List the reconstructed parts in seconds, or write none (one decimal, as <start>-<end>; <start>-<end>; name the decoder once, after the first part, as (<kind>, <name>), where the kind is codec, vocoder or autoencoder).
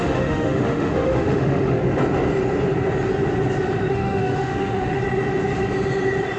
0.0-1.8 (autoencoder, DAC-VAE); 3.9-5.0